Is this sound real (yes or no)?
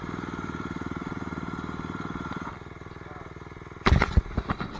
yes